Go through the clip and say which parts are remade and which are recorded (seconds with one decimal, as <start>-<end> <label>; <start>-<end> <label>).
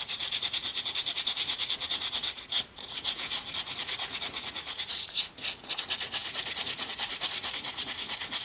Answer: 0.0-8.4 remade